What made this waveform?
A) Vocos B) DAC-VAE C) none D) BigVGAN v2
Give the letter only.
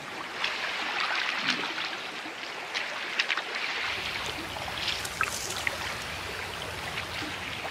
C